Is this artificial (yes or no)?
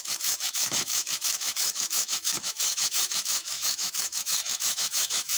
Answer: yes